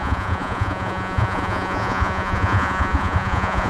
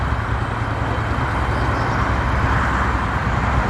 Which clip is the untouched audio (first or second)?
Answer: second